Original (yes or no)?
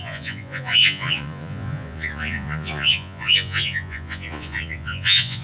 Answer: no